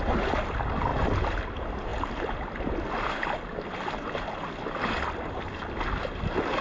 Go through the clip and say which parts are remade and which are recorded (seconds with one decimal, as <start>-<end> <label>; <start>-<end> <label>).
0.0-6.6 recorded